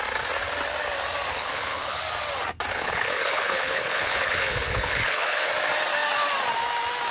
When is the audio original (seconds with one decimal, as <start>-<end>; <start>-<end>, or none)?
0.0-1.3; 2.0-2.7; 5.5-7.1